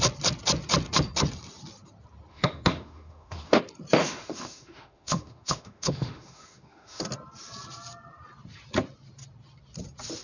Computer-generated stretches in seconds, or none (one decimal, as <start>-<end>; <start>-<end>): 2.3-3.6; 4.0-7.0